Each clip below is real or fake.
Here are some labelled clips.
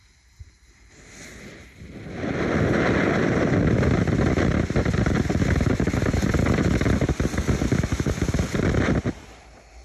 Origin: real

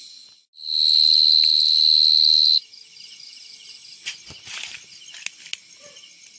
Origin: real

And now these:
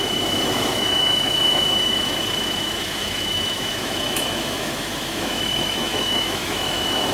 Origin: fake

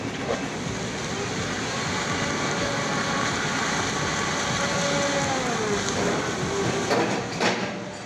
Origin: real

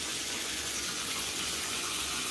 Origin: fake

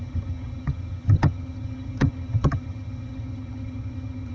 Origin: fake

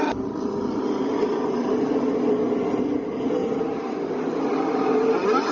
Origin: real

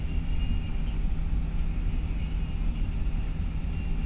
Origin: real